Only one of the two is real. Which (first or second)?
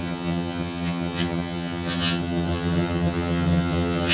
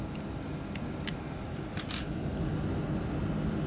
second